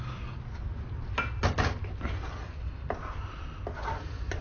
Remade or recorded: recorded